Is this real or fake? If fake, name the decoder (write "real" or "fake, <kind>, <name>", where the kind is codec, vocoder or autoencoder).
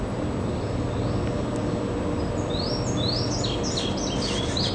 real